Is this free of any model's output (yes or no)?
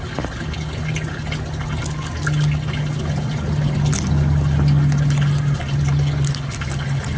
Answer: yes